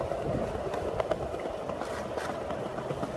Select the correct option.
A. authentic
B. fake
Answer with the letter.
A